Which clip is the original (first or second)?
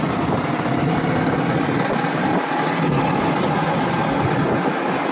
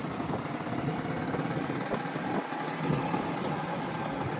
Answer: first